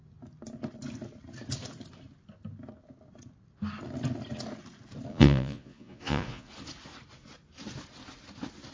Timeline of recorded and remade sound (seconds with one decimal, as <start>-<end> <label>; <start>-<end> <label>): 0.0-5.1 recorded; 5.1-6.5 remade; 6.5-8.7 recorded